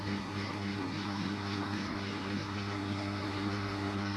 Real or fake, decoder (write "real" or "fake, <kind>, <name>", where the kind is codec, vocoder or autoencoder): fake, codec, SNAC